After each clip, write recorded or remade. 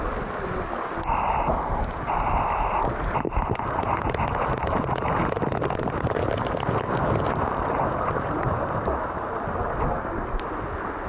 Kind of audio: recorded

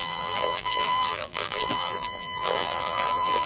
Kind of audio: remade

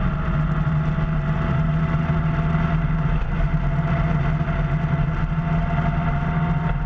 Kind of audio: recorded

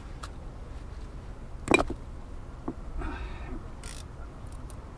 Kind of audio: recorded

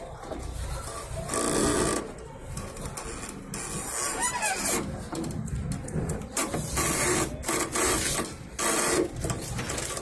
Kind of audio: recorded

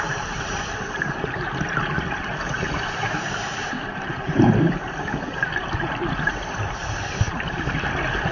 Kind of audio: remade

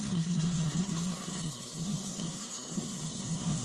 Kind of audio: remade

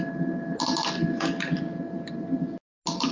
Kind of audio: recorded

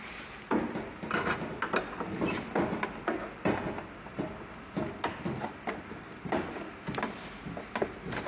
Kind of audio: recorded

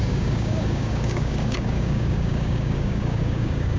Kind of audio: remade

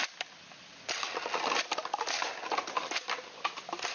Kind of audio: recorded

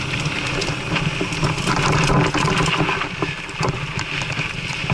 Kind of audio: recorded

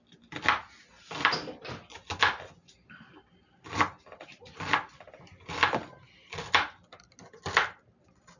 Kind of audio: recorded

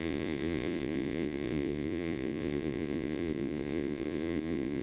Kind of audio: remade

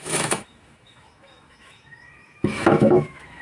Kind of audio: remade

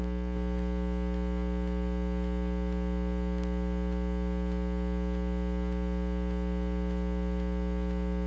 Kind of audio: recorded